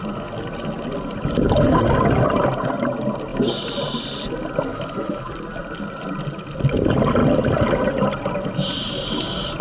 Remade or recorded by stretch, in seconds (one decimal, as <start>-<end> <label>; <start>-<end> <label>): 0.0-4.7 recorded; 4.7-5.3 remade; 5.3-9.6 recorded